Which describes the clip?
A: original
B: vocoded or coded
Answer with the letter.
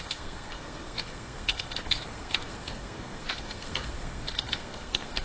B